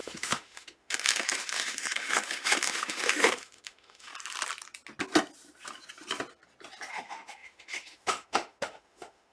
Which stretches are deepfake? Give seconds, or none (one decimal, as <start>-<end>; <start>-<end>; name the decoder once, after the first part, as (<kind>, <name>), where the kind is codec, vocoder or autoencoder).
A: 0.0-4.1 (autoencoder, DAC-VAE); 6.9-9.3